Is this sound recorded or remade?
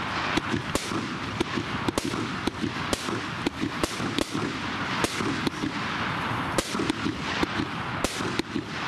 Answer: recorded